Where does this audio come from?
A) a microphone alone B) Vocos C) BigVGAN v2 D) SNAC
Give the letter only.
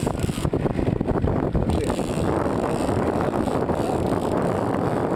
C